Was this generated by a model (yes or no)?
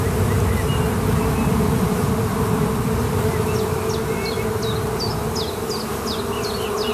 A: no